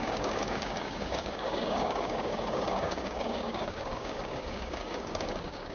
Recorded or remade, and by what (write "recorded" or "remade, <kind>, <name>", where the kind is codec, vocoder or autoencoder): remade, codec, DAC